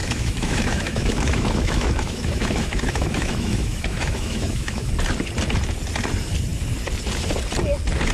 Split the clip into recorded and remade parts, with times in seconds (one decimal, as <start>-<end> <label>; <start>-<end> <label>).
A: 0.0-4.9 remade; 4.9-8.1 recorded